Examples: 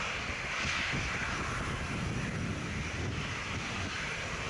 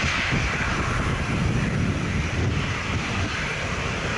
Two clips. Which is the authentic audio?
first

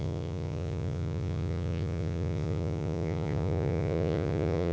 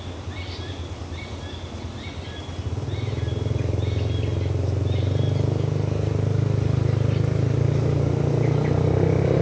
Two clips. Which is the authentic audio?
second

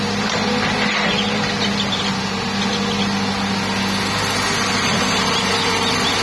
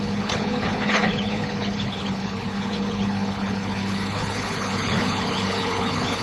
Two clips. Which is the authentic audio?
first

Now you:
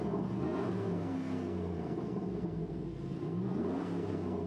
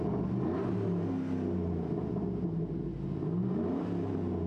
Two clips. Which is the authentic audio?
second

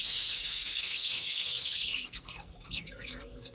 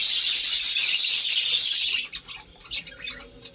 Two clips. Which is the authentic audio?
second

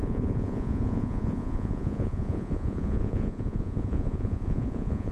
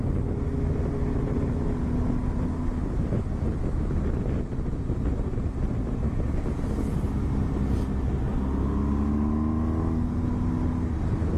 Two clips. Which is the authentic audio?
second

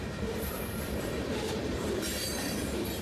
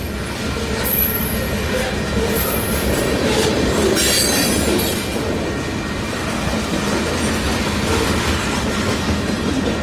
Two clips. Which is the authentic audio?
second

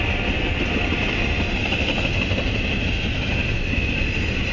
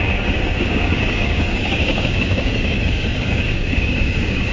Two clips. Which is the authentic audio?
first